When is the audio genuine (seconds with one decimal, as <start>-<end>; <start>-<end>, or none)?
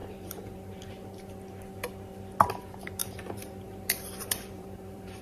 0.9-3.0